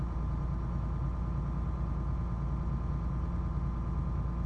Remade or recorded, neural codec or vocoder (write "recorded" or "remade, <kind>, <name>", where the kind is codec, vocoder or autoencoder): recorded